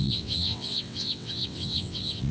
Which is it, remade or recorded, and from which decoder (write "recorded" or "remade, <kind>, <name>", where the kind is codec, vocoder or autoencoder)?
remade, vocoder, WaveNeXt